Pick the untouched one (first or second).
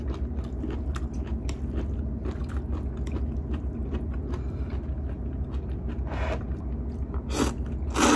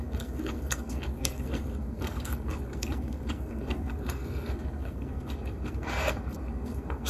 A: first